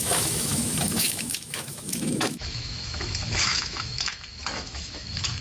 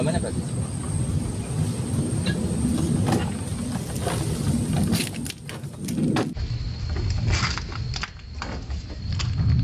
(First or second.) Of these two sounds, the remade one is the first